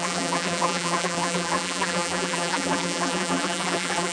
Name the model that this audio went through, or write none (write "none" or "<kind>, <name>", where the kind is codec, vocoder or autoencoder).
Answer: vocoder, BigVGAN v2